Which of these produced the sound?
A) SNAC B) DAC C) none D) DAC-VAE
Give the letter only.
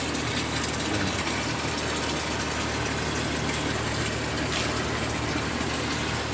C